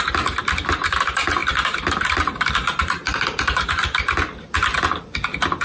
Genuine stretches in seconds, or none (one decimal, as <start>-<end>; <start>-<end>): 0.0-1.4; 3.7-5.6